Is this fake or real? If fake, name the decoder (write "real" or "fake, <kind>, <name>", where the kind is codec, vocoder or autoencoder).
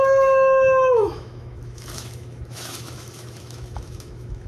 fake, autoencoder, DAC-VAE